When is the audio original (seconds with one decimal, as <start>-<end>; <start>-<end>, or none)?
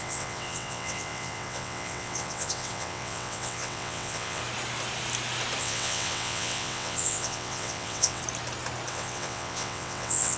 4.4-5.6; 8.2-8.9